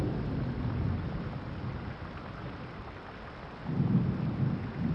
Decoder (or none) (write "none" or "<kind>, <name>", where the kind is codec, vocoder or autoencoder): none